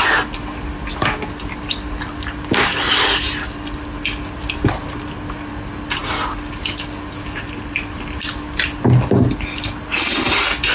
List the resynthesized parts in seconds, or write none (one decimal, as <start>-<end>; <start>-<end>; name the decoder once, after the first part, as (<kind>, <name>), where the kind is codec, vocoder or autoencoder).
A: none